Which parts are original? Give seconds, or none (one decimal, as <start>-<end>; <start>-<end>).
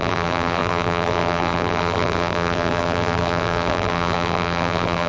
none